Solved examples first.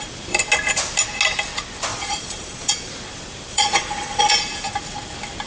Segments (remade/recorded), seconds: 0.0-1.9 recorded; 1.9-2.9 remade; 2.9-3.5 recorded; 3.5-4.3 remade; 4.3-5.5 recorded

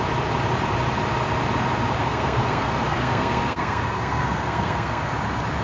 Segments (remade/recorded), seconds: 0.0-2.0 recorded; 2.0-5.1 remade; 5.1-5.6 recorded

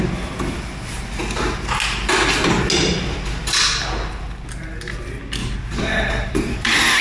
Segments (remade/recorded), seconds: 0.0-5.4 recorded; 5.4-7.0 remade